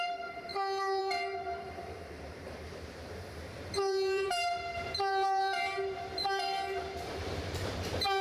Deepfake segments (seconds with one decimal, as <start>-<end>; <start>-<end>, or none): 0.0-0.5; 1.0-8.2